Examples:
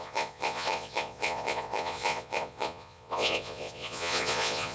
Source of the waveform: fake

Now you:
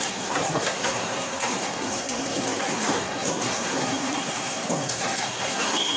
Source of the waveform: fake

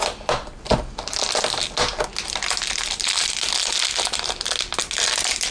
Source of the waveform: real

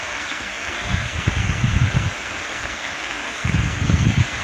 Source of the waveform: fake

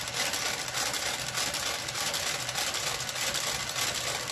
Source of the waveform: real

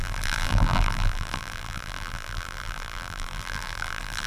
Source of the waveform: fake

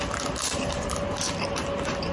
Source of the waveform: fake